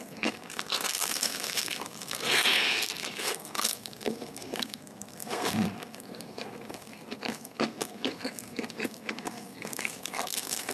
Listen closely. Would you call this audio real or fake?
fake